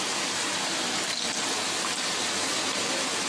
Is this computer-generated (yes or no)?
no